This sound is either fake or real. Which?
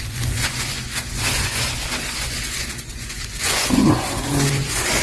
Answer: fake